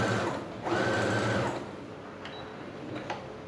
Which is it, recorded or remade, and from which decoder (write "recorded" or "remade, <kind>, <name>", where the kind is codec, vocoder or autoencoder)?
recorded